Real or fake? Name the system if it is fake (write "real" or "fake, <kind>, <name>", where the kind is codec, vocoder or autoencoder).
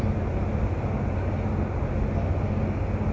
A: real